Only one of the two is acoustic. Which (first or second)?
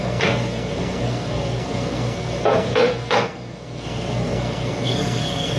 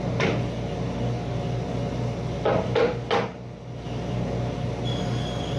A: second